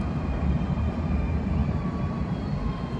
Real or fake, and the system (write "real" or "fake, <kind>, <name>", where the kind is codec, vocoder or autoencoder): fake, vocoder, BigVGAN v2